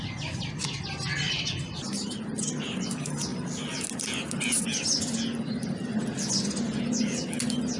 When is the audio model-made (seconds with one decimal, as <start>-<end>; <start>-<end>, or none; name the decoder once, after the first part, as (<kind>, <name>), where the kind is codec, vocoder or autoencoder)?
none